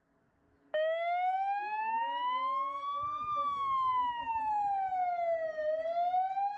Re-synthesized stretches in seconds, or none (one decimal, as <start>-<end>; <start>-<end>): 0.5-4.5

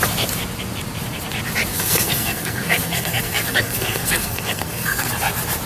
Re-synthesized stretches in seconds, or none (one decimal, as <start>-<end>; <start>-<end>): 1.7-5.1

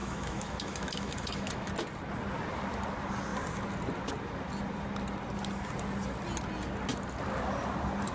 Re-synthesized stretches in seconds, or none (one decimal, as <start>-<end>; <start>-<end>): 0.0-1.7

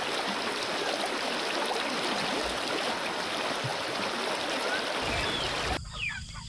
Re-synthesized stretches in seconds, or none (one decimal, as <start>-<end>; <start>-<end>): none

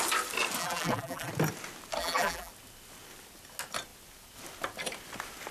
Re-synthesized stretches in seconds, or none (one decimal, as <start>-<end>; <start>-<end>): 0.6-1.3; 2.0-2.5